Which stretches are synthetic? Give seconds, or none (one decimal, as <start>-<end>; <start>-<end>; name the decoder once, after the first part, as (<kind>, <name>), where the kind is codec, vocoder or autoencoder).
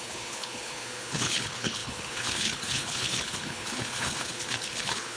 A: 0.0-5.2 (codec, HILCodec)